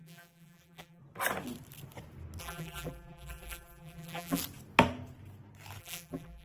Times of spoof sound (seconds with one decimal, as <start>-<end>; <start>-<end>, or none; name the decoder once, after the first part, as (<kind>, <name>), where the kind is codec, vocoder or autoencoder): 0.0-1.0 (vocoder, BigVGAN v2); 2.4-4.4; 5.8-6.4